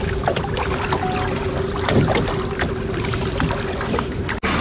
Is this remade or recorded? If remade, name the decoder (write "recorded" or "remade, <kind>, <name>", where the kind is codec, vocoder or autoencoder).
recorded